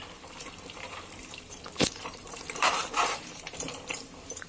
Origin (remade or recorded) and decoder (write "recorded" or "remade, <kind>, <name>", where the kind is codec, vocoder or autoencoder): remade, vocoder, BigVGAN v2